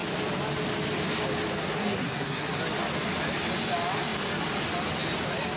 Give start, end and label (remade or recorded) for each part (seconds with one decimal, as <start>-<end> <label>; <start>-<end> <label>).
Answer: 0.0-1.6 recorded; 1.6-2.6 remade; 2.6-5.6 recorded